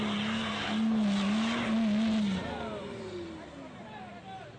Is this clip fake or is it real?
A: real